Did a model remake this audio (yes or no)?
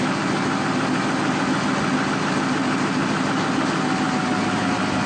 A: no